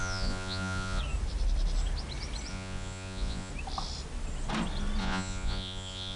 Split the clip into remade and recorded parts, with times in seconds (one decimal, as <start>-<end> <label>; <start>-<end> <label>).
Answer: 0.0-1.0 remade; 1.0-2.5 recorded; 2.5-3.5 remade; 3.5-5.0 recorded; 5.0-6.2 remade